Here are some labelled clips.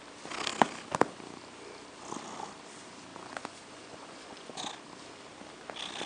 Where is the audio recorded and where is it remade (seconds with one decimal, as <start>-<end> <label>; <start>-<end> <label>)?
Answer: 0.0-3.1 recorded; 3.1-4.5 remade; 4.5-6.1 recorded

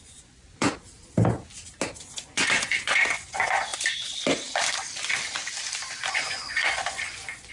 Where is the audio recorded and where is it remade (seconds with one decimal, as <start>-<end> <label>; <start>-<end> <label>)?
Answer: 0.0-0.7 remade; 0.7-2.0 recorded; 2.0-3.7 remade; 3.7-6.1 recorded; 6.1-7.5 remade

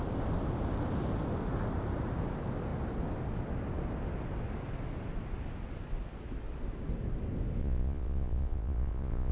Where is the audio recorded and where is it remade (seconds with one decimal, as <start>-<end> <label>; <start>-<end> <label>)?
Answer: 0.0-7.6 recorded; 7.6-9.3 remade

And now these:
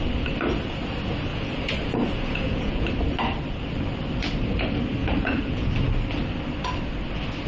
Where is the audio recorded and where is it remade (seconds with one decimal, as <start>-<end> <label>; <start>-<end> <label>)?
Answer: 0.0-1.3 recorded; 1.3-2.9 remade; 2.9-5.0 recorded; 5.0-5.7 remade; 5.7-7.5 recorded

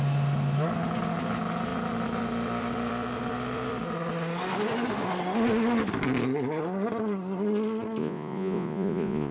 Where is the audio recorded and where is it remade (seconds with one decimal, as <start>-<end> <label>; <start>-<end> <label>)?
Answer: 0.0-8.0 recorded; 8.0-9.3 remade

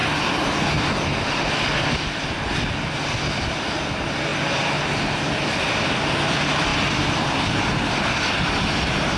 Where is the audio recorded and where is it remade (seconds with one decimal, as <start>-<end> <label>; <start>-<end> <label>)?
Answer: 0.0-9.2 recorded

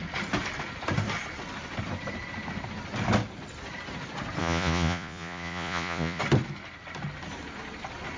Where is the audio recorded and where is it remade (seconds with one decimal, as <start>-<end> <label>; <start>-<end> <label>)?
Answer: 0.0-4.4 recorded; 4.4-6.2 remade; 6.2-8.2 recorded